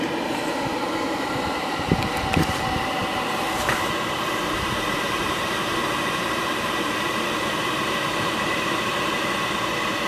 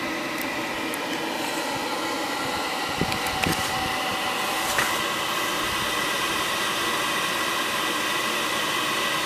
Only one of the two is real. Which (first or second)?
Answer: second